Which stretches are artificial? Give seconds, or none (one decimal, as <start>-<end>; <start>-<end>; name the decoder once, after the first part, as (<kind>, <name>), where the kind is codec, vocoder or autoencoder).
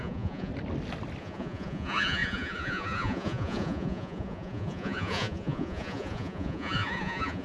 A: 0.0-0.5 (vocoder, Vocos); 1.2-7.4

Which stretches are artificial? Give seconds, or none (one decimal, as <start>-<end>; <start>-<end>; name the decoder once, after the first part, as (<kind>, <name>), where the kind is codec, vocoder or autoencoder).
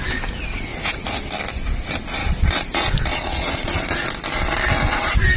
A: 2.2-4.1 (vocoder, Vocos)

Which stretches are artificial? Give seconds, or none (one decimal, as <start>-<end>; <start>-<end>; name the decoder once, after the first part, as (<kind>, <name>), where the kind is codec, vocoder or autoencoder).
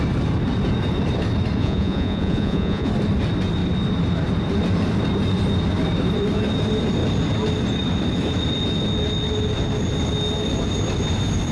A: 1.6-2.9 (vocoder, Vocos)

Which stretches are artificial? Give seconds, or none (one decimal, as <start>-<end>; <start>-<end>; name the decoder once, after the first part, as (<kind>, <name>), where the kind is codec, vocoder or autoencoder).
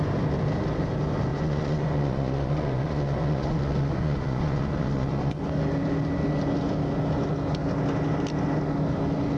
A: 1.3-5.4 (vocoder, Vocos)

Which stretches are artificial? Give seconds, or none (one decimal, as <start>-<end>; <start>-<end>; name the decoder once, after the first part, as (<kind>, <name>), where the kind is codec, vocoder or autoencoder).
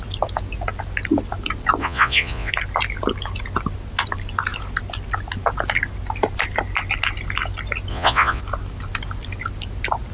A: 1.8-2.5 (vocoder, Vocos); 7.9-8.4